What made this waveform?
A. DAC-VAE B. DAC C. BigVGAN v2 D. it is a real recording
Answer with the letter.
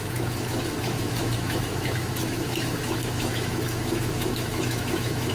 A